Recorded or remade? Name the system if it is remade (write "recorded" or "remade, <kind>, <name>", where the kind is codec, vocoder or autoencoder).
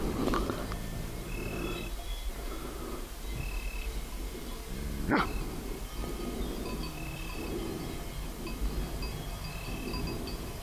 recorded